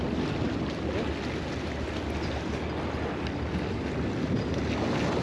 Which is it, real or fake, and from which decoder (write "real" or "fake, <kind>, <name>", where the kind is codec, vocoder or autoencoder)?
real